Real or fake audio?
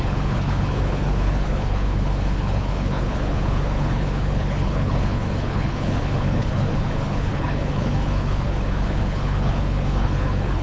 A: fake